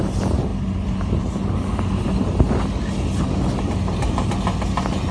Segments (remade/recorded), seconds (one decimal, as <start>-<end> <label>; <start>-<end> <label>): 0.0-5.1 recorded